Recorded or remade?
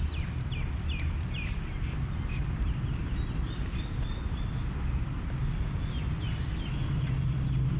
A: recorded